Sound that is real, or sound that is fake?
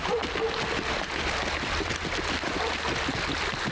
real